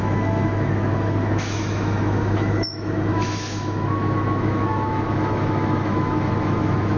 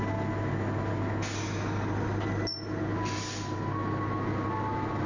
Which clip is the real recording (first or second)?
second